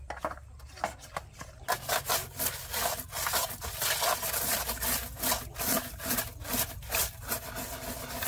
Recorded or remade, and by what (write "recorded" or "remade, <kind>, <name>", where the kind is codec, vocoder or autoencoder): recorded